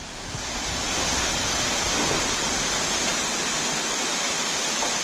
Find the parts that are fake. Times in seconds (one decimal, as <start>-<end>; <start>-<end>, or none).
0.0-1.3